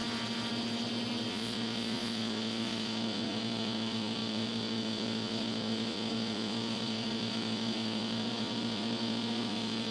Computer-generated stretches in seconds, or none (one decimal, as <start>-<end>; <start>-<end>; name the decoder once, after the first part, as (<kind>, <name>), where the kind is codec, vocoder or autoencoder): 1.3-9.9 (vocoder, Vocos)